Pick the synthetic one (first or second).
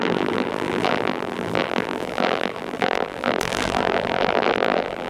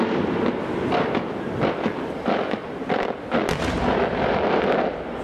first